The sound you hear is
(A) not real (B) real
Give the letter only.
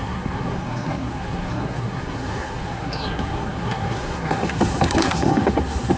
A